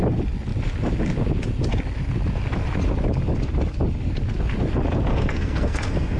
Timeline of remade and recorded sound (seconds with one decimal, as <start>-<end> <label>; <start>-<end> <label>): 0.0-5.1 recorded; 5.1-6.2 remade